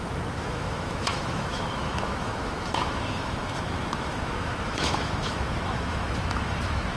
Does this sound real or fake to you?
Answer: fake